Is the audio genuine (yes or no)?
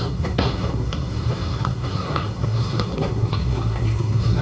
no